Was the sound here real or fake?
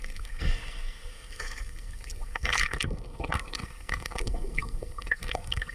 fake